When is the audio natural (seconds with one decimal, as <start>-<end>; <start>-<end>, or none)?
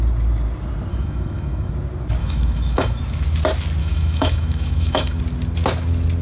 0.0-0.9; 1.7-2.2; 3.0-3.8; 5.2-6.2